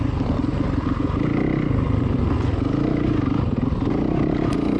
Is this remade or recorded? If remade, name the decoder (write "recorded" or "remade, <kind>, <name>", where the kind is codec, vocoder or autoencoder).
recorded